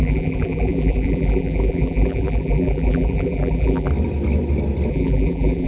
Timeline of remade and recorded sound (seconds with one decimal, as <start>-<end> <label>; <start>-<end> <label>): 0.0-3.9 remade; 3.9-4.9 recorded; 4.9-5.7 remade

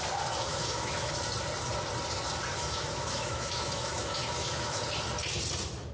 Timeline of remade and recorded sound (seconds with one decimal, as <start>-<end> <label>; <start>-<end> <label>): 0.0-0.5 recorded; 0.5-1.1 remade; 1.1-2.5 recorded; 2.5-4.8 remade; 4.8-5.9 recorded

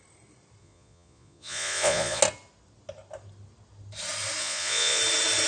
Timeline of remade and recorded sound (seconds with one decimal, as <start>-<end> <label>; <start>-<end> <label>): 0.0-0.6 recorded; 0.6-2.2 remade; 2.2-4.4 recorded; 4.4-5.0 remade; 5.0-5.5 recorded

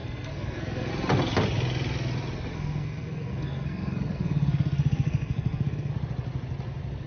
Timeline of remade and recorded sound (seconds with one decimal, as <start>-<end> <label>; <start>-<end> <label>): 0.0-0.9 remade; 0.9-2.5 recorded; 2.5-5.9 remade; 5.9-7.1 recorded

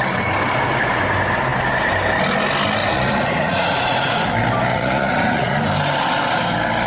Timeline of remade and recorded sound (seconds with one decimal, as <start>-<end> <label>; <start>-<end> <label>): 0.0-2.8 recorded; 2.8-4.2 remade; 4.2-4.7 recorded; 4.7-5.6 remade; 5.6-6.9 recorded

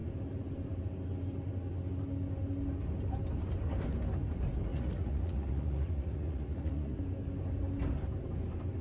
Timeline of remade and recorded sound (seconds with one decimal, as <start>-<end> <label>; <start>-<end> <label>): 0.0-4.7 recorded; 4.7-7.0 remade; 7.0-8.8 recorded